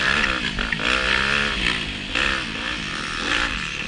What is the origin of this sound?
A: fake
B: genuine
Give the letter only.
B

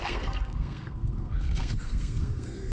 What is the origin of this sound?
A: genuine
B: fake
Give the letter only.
B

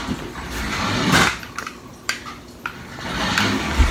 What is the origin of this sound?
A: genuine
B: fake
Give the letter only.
A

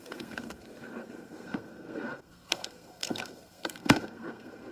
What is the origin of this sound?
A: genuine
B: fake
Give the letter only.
B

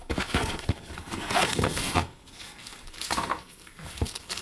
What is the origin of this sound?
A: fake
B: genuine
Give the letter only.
A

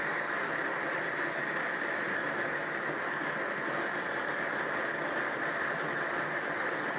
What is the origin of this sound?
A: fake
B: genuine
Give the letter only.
B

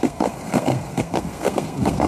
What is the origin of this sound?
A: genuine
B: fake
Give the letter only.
B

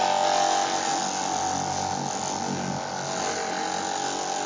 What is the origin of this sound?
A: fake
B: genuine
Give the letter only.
B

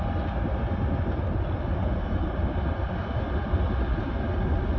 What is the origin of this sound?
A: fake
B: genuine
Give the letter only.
B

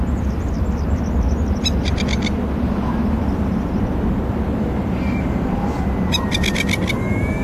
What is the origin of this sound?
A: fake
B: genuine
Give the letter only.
B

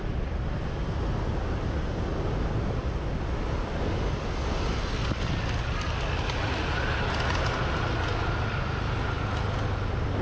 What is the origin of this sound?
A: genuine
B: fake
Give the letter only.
A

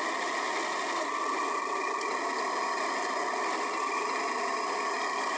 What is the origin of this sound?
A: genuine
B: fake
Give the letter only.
A